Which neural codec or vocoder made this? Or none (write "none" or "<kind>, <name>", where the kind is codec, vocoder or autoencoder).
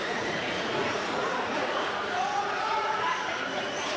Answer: vocoder, Vocos